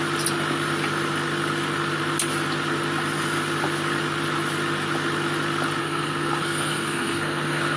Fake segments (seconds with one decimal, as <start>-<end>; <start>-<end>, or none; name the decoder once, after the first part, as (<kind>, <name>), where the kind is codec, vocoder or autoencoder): 5.8-7.8 (codec, SNAC)